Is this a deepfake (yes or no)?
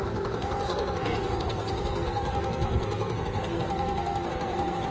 yes